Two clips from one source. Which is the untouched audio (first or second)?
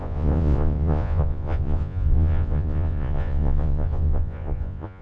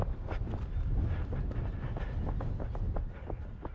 second